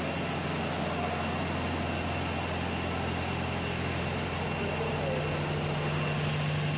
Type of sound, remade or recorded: recorded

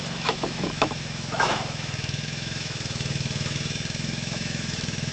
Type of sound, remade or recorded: remade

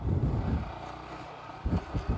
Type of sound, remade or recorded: recorded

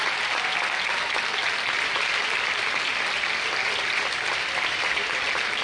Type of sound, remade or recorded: recorded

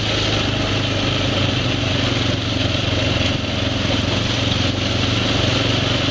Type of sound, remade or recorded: recorded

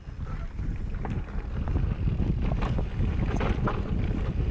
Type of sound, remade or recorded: recorded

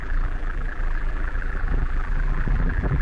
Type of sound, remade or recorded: remade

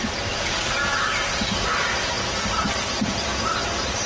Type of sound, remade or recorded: recorded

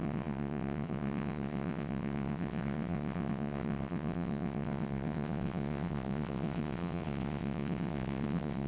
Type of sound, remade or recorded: remade